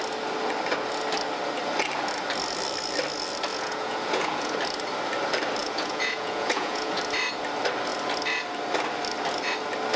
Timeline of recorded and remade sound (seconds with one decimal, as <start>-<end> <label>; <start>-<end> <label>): 0.0-3.5 recorded; 3.5-4.5 remade; 4.5-5.6 recorded; 5.6-7.0 remade; 7.0-10.0 recorded